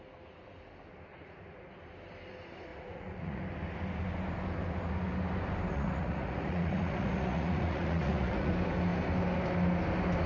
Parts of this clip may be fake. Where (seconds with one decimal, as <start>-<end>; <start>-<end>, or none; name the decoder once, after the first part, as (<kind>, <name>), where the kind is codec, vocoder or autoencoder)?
1.1-1.7 (vocoder, Vocos); 2.7-3.4; 5.7-8.5